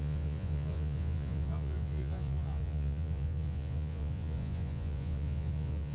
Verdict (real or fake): fake